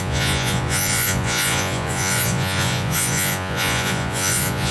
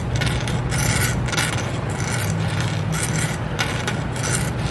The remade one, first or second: first